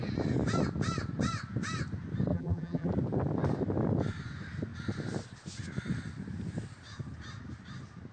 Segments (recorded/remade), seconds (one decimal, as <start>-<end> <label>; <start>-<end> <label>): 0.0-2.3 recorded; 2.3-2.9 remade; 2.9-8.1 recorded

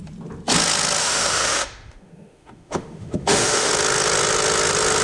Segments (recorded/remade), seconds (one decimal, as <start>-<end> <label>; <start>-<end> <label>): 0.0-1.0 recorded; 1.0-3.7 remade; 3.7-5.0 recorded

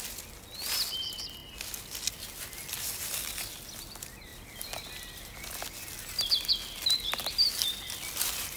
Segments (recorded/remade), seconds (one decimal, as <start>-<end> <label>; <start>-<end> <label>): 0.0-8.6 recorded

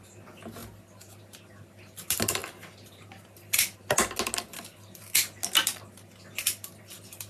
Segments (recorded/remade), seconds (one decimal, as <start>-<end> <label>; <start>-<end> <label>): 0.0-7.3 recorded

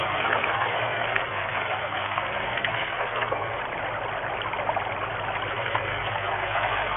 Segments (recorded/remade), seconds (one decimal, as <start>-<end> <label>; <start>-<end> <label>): 0.0-3.6 remade; 3.6-5.5 recorded; 5.5-7.0 remade